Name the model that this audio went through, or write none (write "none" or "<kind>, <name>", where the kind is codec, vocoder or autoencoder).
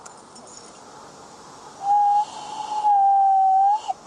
none